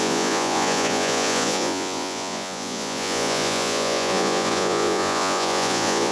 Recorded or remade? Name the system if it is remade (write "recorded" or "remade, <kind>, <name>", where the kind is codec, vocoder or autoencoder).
remade, vocoder, Vocos